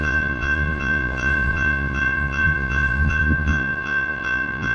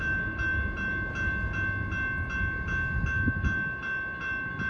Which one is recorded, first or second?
second